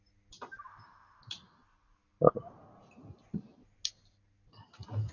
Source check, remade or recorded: recorded